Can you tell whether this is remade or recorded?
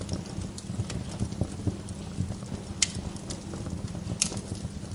recorded